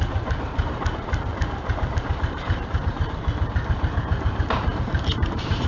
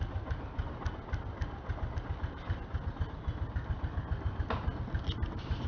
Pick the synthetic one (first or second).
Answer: first